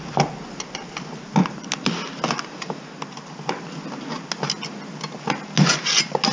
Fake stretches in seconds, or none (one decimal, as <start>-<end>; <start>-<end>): none